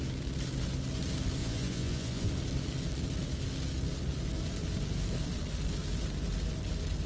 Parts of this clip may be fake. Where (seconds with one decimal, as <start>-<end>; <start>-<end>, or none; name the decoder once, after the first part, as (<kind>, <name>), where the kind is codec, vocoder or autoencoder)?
1.4-2.3 (vocoder, Vocos)